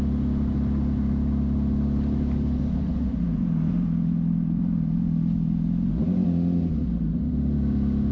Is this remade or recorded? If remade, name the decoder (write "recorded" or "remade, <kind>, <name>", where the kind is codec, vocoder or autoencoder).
recorded